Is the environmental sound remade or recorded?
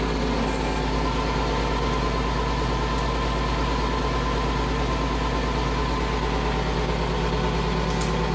recorded